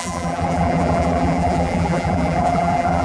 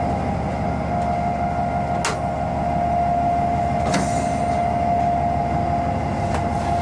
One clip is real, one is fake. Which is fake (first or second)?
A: first